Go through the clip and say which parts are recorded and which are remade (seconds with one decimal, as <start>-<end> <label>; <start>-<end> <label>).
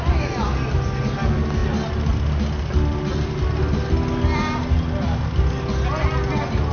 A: 0.0-6.7 recorded